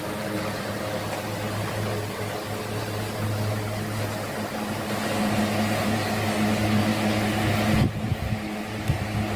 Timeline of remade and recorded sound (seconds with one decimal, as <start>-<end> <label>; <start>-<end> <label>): 0.0-9.4 recorded